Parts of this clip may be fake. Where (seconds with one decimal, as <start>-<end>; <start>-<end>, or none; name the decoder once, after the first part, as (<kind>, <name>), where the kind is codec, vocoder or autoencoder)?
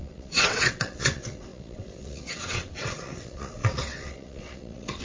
0.0-5.0 (vocoder, WaveNeXt)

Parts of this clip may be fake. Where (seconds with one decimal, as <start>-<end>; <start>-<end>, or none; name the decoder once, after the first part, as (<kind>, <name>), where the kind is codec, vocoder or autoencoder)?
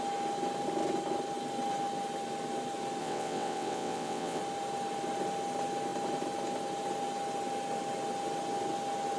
3.0-4.4 (vocoder, WaveNeXt)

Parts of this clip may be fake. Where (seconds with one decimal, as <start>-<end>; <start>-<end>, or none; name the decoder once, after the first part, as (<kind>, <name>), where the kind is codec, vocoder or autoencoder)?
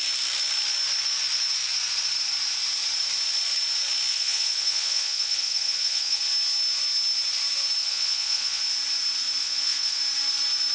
4.1-6.2 (vocoder, WaveNeXt); 7.8-8.6; 9.4-10.0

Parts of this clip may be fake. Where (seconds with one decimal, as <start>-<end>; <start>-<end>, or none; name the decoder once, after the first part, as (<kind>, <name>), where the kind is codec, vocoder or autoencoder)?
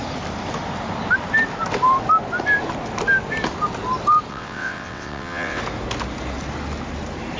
4.3-5.6 (vocoder, WaveNeXt)